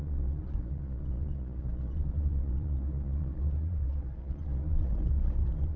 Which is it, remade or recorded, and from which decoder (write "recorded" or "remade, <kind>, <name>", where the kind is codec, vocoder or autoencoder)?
remade, vocoder, Vocos